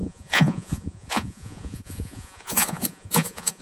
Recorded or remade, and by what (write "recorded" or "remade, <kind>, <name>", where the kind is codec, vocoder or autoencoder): remade, vocoder, Vocos